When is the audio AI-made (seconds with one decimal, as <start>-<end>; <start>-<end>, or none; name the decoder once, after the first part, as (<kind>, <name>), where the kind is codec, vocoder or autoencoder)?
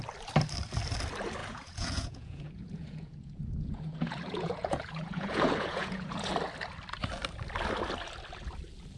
1.4-6.3 (vocoder, Vocos)